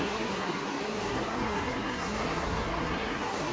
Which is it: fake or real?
fake